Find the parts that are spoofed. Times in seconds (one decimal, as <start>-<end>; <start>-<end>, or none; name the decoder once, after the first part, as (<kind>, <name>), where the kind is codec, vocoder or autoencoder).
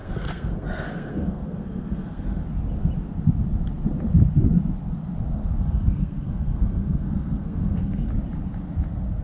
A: 0.0-2.4 (codec, SNAC); 5.6-8.1